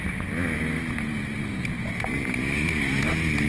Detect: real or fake real